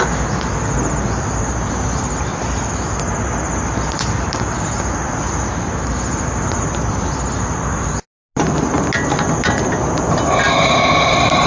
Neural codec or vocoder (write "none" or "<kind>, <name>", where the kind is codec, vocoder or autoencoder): none